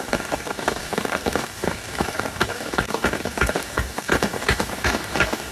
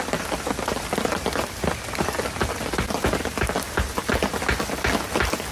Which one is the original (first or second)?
second